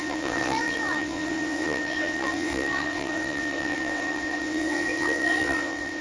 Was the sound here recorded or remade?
remade